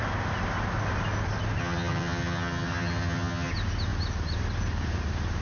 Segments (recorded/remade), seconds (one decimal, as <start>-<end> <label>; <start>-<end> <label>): 0.0-1.6 recorded; 1.6-3.5 remade; 3.5-5.4 recorded